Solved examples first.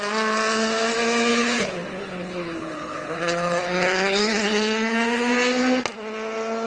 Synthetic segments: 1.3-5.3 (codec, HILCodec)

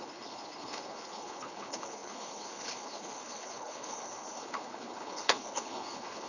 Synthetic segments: 0.0-6.3 (codec, HILCodec)

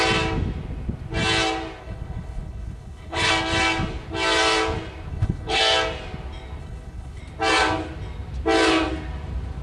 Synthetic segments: 1.8-3.3 (codec, HILCodec); 5.1-5.6; 6.6-7.2